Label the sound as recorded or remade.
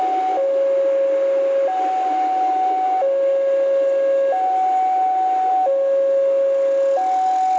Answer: recorded